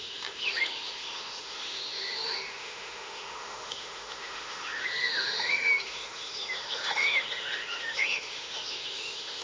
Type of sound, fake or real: fake